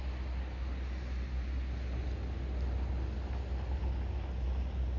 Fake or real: real